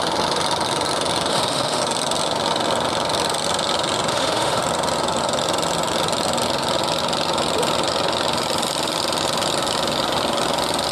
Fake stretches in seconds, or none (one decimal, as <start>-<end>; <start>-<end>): 1.3-1.8; 4.1-4.6